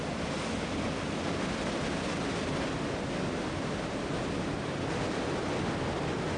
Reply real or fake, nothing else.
real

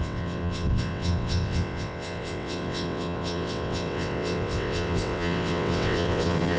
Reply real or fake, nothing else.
fake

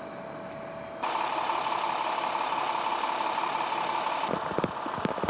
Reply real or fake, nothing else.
real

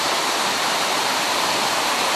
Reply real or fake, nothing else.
real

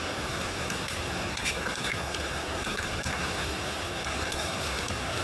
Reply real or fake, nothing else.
fake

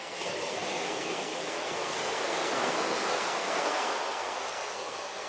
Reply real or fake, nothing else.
fake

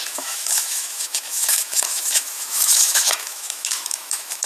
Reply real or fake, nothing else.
fake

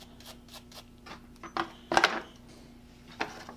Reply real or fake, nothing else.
real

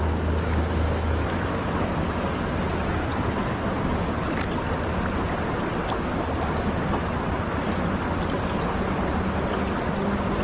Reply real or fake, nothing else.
real